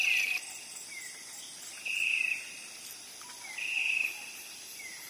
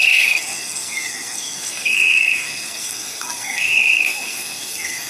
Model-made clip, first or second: second